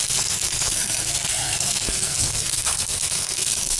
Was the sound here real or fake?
fake